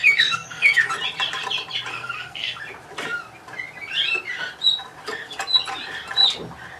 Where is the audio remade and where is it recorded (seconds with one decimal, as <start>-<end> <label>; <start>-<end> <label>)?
0.0-0.9 remade; 0.9-1.9 recorded; 1.9-2.6 remade; 2.6-6.8 recorded